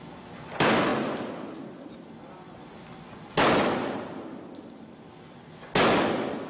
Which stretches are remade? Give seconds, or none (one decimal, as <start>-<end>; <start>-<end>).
none

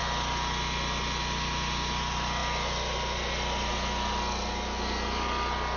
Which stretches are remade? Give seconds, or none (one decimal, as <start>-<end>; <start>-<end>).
none